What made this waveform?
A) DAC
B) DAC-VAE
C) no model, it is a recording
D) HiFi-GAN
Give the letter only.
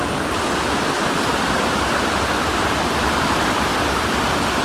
C